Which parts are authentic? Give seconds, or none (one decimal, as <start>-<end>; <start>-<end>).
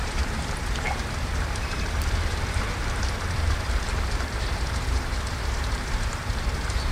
none